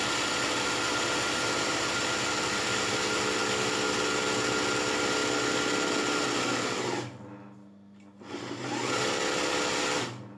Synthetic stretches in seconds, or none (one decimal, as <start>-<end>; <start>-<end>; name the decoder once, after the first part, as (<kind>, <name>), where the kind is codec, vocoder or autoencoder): none

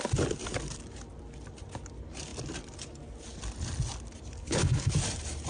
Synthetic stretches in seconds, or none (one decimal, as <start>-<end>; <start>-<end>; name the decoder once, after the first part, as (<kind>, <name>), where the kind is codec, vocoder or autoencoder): 4.4-4.9 (codec, HILCodec)

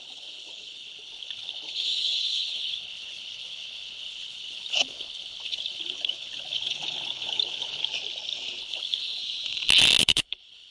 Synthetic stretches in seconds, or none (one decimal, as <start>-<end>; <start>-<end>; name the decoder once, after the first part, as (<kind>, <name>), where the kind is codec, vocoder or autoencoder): 0.0-7.8 (codec, HILCodec); 8.6-9.2; 10.0-10.7

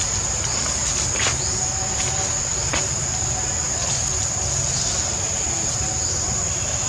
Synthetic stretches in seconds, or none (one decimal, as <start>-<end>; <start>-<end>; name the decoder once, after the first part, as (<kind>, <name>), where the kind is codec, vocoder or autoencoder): none

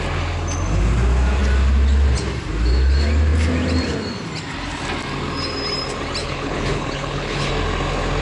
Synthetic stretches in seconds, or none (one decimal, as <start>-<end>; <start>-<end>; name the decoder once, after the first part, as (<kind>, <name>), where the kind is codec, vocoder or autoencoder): 6.2-7.5 (codec, HILCodec)

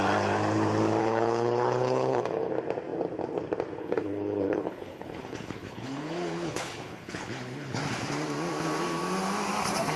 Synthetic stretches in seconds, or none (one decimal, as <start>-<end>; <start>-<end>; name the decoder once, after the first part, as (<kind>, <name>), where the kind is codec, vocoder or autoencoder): 1.0-2.5 (codec, HILCodec); 3.8-7.8

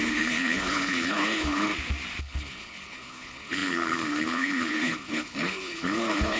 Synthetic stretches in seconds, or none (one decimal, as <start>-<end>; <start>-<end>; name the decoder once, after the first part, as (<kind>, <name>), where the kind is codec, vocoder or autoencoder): 0.0-1.7 (codec, HILCodec); 2.2-6.4